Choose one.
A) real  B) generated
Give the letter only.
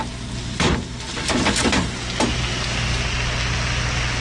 A